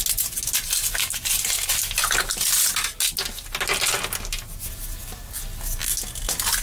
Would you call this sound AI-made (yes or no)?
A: no